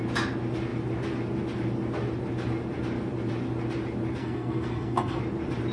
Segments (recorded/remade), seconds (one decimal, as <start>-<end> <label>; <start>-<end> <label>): 0.0-4.2 recorded; 4.2-5.2 remade; 5.2-5.7 recorded